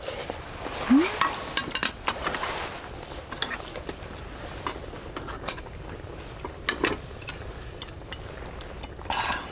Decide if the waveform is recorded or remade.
recorded